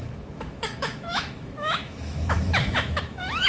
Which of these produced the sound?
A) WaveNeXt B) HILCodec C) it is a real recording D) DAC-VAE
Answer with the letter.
D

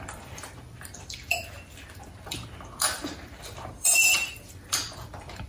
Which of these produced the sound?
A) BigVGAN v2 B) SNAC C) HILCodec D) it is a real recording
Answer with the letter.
A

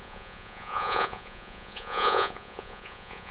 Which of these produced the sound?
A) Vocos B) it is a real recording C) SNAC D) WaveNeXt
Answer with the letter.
A